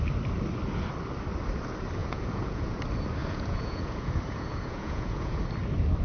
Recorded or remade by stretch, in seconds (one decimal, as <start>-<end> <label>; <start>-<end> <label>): 0.0-2.0 recorded; 2.0-2.8 remade; 2.8-3.2 recorded; 3.2-5.4 remade; 5.4-6.0 recorded